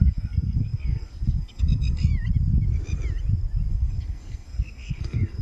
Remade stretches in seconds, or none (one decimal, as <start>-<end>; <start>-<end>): 0.0-2.1; 3.7-5.4